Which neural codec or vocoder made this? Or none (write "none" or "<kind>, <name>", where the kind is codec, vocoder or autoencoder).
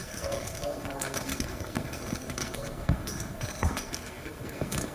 codec, SNAC